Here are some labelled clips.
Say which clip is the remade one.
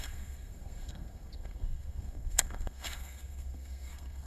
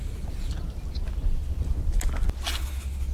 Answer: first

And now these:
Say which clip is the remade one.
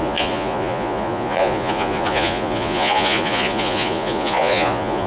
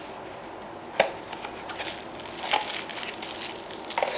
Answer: first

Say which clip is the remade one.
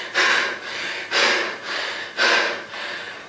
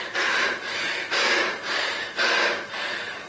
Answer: second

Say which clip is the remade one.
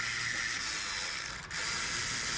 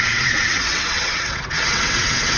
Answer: second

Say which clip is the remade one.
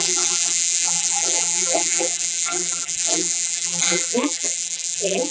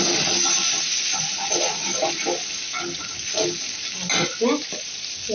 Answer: first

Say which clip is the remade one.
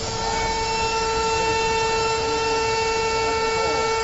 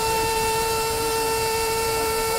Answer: second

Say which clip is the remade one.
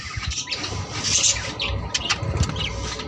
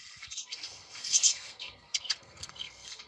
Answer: second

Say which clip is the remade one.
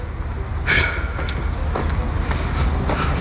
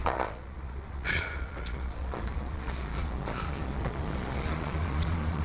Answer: second